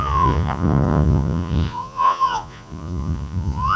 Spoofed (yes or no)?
yes